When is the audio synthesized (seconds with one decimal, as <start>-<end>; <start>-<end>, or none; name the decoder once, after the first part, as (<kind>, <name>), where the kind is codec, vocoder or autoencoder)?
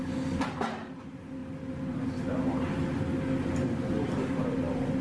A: none